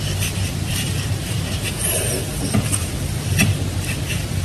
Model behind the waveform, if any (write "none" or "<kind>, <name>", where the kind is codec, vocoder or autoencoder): vocoder, BigVGAN v2